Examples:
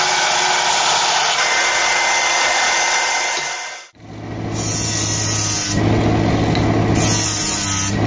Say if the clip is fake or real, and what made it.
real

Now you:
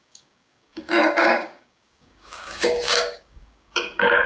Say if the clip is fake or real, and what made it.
fake, codec, DAC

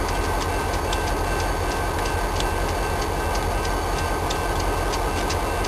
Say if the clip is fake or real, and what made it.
real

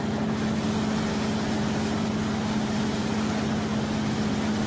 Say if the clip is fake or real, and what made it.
real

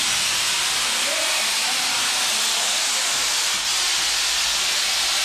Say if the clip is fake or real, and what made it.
real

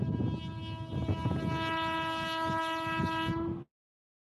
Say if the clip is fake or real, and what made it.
real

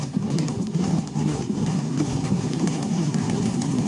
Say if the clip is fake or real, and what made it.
fake, codec, SNAC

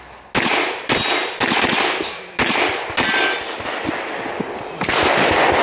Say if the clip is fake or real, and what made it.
real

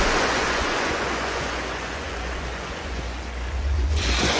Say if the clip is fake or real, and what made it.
fake, vocoder, Vocos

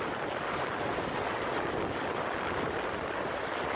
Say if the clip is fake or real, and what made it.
real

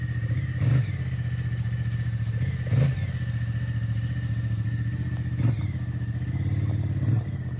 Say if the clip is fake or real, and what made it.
real